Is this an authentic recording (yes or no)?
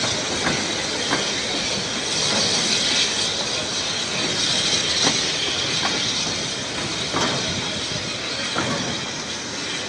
yes